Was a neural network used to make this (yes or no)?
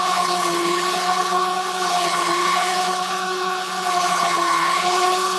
yes